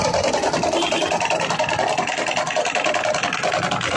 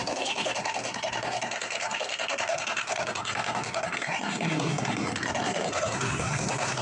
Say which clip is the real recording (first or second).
first